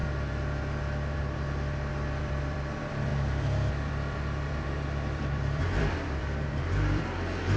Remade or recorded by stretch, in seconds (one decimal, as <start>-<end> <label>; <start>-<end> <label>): 0.0-2.2 recorded; 2.2-3.1 remade; 3.1-3.7 recorded; 3.7-7.6 remade

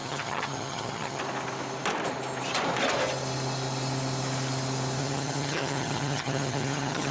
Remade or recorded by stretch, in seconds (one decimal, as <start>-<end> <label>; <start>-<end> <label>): 0.0-1.2 remade; 1.2-5.0 recorded; 5.0-7.1 remade